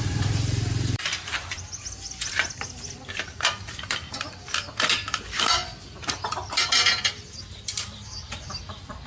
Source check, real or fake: fake